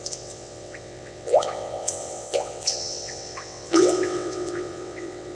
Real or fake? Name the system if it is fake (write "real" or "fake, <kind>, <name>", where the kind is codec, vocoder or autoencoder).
fake, vocoder, WaveNeXt